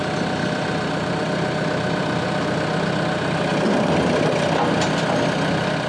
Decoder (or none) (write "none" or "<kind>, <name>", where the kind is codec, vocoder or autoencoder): none